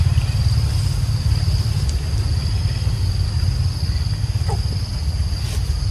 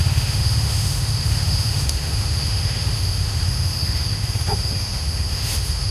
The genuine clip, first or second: first